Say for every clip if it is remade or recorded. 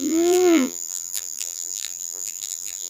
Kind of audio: remade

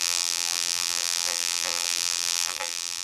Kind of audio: remade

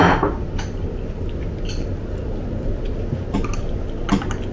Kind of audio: recorded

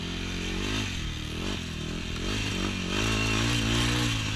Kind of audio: recorded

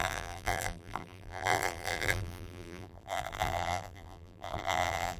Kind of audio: remade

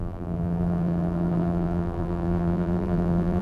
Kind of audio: remade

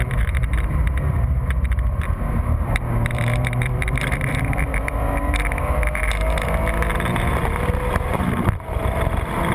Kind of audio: remade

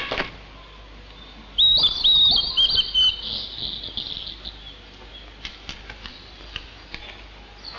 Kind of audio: recorded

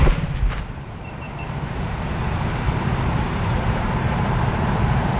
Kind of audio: remade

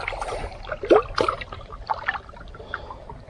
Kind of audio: recorded